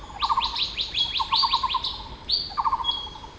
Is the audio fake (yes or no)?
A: no